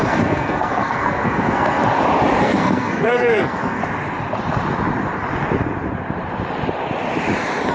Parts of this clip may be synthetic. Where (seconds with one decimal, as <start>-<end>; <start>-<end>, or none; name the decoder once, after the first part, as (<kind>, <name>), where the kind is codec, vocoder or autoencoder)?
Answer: 0.0-1.8 (codec, SNAC); 2.4-3.8